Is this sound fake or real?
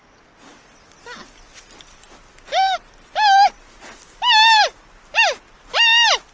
real